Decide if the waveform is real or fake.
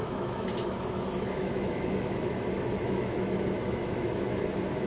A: fake